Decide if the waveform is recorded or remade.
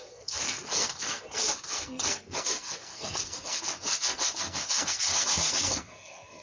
remade